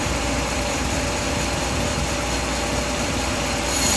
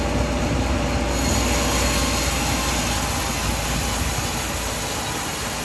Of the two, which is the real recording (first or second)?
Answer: second